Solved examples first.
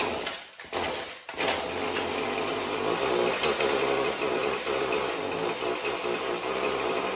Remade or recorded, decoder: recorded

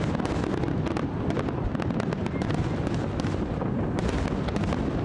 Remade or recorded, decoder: recorded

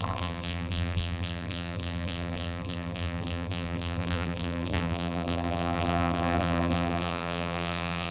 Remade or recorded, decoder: remade, vocoder, BigVGAN v2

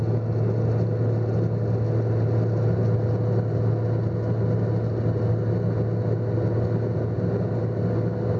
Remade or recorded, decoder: recorded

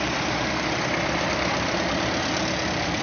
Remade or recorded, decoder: remade, vocoder, BigVGAN v2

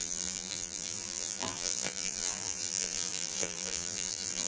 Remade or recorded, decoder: remade, vocoder, BigVGAN v2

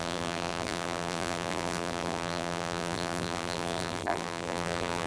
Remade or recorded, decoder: remade, vocoder, BigVGAN v2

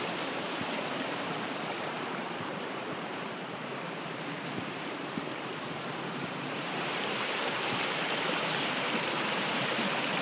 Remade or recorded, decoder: remade, vocoder, BigVGAN v2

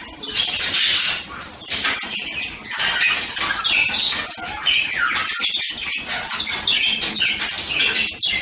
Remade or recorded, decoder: recorded